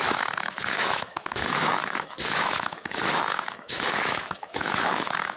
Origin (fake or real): fake